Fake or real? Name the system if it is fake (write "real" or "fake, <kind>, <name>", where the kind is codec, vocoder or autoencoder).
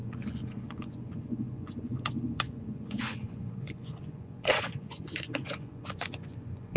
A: fake, vocoder, Vocos